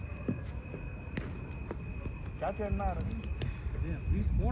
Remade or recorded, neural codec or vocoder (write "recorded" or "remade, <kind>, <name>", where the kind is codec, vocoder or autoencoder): recorded